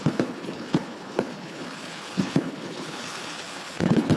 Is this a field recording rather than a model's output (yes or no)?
no